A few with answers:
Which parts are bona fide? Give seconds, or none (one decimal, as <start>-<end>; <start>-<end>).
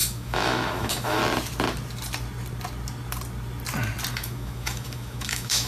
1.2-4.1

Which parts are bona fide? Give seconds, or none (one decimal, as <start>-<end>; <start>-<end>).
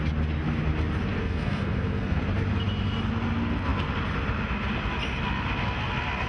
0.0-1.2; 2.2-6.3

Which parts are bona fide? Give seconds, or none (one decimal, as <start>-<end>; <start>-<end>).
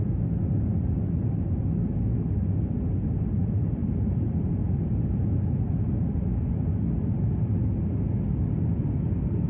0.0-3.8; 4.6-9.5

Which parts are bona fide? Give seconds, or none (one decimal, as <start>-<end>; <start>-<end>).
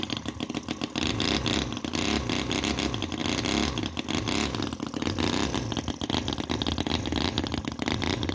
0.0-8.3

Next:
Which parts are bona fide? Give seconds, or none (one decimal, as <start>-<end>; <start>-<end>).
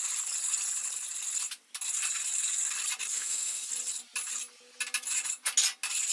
0.0-3.1; 3.7-6.1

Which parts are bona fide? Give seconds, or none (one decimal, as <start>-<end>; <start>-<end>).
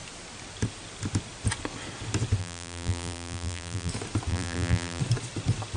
0.0-2.4; 3.9-4.3; 5.0-5.8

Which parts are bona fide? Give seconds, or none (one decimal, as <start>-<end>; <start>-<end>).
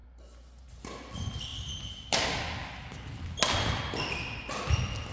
0.7-5.1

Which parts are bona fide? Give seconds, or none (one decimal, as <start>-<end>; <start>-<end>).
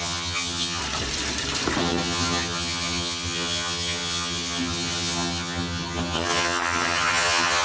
0.8-1.8